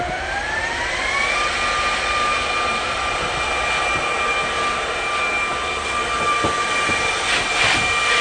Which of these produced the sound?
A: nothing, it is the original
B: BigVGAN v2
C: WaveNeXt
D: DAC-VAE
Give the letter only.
A